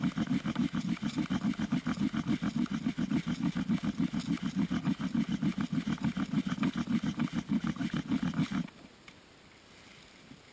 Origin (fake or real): real